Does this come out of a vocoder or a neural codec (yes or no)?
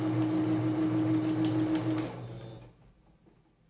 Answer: no